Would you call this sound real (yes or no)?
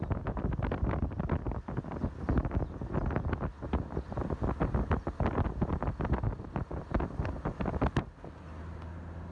yes